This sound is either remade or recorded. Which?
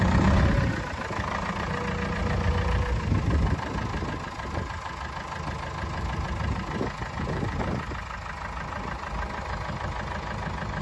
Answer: recorded